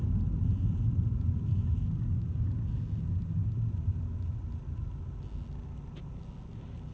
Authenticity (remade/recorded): recorded